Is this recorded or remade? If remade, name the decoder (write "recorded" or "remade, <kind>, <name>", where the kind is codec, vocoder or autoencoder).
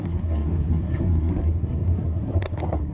remade, codec, SNAC